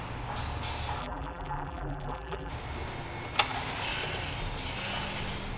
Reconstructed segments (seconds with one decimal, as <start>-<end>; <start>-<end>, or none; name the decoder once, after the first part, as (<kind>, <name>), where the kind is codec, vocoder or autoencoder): 1.0-2.5 (vocoder, BigVGAN v2)